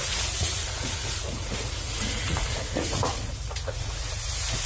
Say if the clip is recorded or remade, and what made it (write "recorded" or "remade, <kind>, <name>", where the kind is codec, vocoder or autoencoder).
remade, vocoder, Vocos